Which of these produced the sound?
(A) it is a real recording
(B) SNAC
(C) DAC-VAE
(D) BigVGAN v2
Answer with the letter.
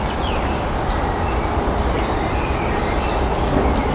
A